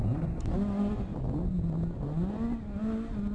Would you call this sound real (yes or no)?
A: yes